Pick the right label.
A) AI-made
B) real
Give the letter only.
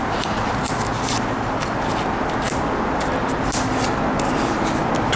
B